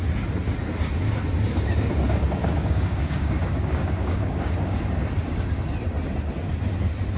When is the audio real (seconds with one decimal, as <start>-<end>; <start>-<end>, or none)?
0.0-2.4; 4.8-7.2